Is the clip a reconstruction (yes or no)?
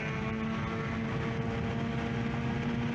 no